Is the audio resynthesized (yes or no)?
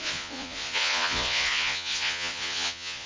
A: yes